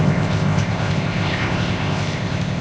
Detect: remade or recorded remade